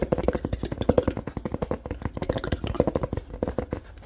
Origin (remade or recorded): recorded